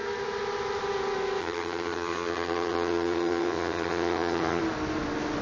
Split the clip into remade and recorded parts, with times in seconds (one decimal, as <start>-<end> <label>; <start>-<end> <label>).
0.0-1.4 recorded; 1.4-4.6 remade; 4.6-5.4 recorded